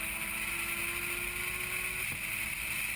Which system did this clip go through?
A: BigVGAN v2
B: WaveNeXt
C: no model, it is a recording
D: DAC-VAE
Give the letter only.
C